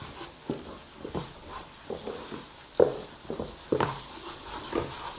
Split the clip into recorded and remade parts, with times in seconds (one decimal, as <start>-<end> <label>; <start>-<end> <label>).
0.0-2.9 recorded; 2.9-4.3 remade; 4.3-5.2 recorded